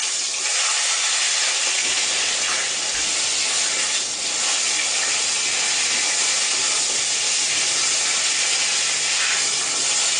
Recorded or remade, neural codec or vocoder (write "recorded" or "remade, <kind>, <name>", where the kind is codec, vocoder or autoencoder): recorded